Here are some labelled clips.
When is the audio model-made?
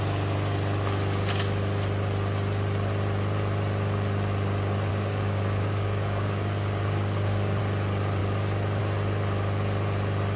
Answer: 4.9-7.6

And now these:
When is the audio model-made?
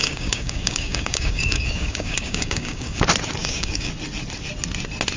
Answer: 0.0-3.0; 3.4-3.9